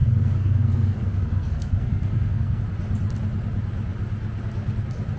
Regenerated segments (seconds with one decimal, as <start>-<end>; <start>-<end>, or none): 0.0-2.6